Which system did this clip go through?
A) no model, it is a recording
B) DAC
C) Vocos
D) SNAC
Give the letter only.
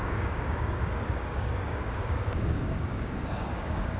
B